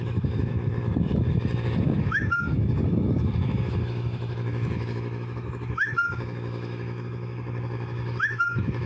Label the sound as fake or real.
fake